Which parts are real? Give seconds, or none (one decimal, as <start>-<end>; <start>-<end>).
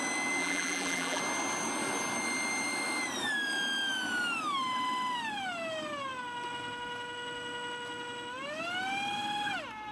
0.0-0.4; 1.2-9.9